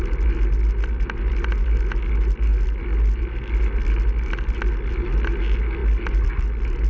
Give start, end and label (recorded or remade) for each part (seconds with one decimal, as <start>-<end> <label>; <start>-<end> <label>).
0.0-6.9 recorded